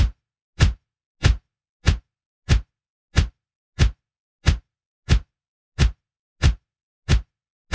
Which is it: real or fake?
real